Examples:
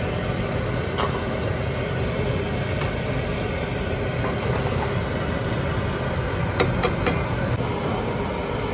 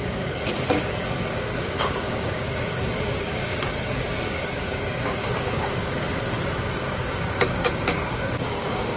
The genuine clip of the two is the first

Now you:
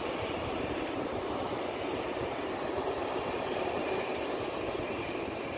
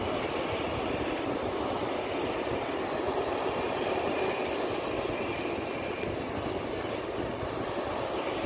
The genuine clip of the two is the second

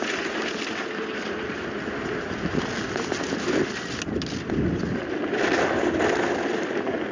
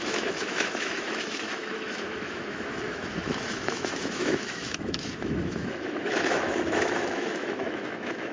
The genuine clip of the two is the first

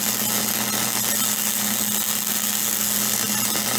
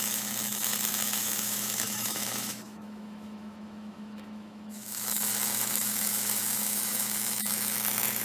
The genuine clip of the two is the first